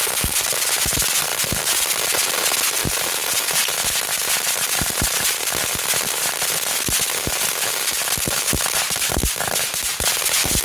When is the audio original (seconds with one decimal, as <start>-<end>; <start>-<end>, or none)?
0.0-1.3; 1.9-2.8; 8.0-10.6

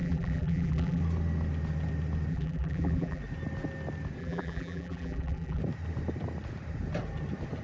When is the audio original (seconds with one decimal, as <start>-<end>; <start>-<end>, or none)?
1.0-2.3; 3.2-4.2; 5.6-7.6

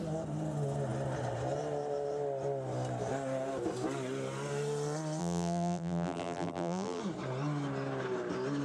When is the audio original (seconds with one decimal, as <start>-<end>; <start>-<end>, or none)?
0.0-5.2; 7.0-8.6

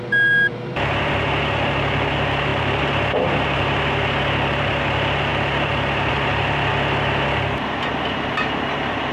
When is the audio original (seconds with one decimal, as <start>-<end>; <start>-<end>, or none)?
6.7-7.9

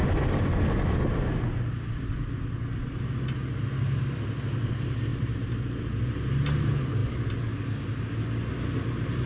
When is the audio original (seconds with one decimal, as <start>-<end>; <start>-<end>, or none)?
0.0-5.1; 5.8-9.3

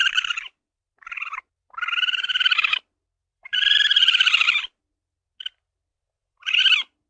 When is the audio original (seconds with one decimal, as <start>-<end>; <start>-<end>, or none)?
1.4-2.3; 2.8-3.3; 4.8-5.9; 6.6-7.1

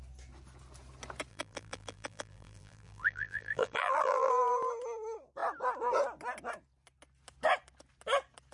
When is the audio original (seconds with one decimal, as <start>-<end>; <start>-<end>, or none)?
0.0-1.3; 4.3-8.5

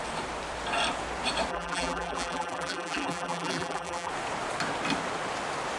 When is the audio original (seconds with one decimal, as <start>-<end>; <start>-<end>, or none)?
0.0-1.5; 4.1-5.8